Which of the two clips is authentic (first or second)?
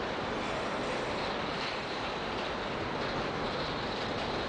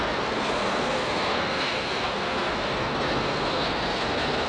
first